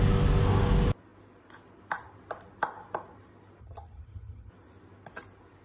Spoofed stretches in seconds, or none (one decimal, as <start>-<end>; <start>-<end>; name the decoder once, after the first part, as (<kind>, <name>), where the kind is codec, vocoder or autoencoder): 3.6-4.5 (vocoder, HiFi-GAN)